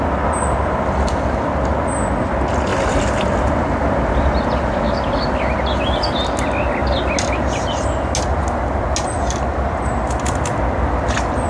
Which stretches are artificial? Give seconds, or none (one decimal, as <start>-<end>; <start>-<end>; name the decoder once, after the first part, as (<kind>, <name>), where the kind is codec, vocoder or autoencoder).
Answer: none